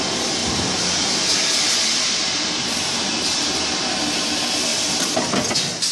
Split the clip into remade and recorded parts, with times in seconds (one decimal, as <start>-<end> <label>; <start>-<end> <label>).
0.0-0.4 recorded; 0.4-3.9 remade; 3.9-5.9 recorded